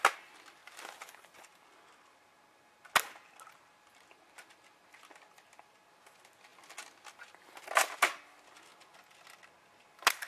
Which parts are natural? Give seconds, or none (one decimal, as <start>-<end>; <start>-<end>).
0.0-10.3